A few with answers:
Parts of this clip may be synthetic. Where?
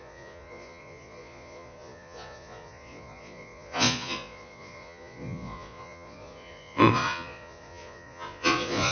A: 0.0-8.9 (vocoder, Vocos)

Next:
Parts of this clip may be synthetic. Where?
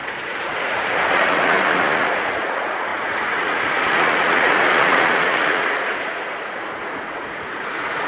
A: 0.0-8.1 (vocoder, Vocos)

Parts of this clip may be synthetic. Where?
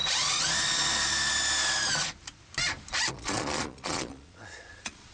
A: 3.1-5.1 (vocoder, Vocos)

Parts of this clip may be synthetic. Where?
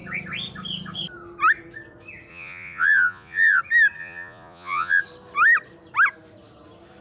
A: 2.3-3.6 (vocoder, Vocos); 4.0-5.0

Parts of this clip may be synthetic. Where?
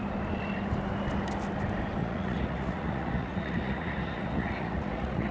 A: 2.0-5.3 (vocoder, Vocos)